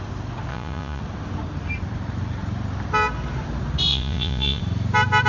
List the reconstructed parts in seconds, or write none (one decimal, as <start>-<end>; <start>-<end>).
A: 0.5-1.0; 3.9-4.6